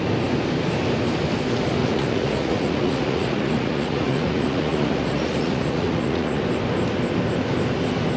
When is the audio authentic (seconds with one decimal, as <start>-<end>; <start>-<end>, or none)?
0.0-1.8; 6.4-8.2